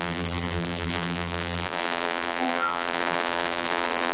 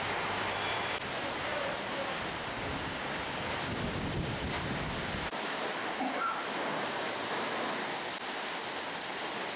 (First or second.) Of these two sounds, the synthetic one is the first